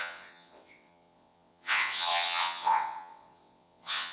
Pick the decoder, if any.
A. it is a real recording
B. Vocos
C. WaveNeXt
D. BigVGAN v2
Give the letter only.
C